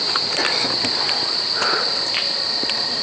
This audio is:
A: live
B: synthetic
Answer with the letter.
A